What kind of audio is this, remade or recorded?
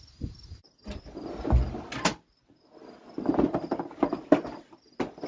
recorded